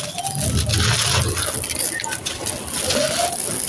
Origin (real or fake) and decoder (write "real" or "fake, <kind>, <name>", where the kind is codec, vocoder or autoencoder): real